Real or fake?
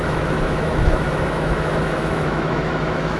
fake